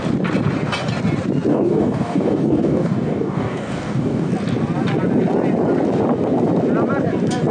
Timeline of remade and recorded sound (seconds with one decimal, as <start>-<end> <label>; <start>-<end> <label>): 0.0-1.5 recorded; 1.5-4.3 remade; 4.3-7.5 recorded